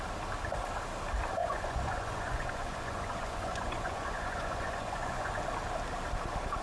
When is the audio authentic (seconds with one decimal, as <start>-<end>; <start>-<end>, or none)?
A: 0.0-1.4; 5.3-6.6